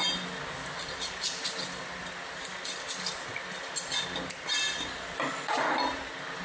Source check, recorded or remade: recorded